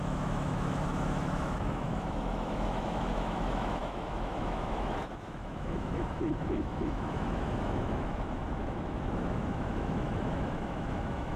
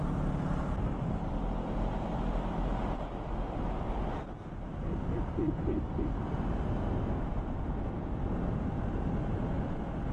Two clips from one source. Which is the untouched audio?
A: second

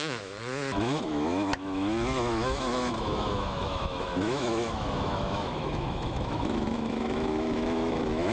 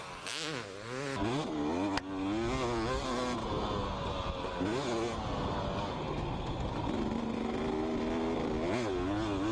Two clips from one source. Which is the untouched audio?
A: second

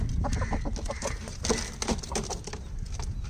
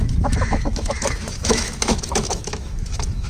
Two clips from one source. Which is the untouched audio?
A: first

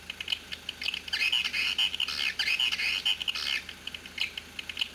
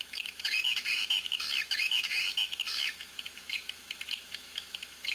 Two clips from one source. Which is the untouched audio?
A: first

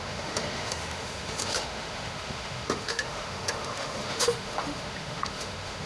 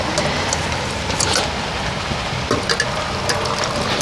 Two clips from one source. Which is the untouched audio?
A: second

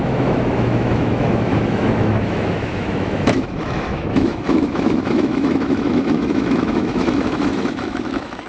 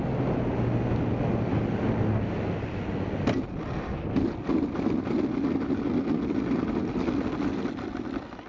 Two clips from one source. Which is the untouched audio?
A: second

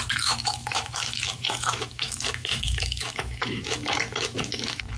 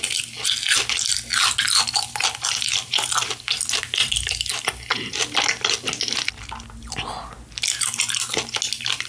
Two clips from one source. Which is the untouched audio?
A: second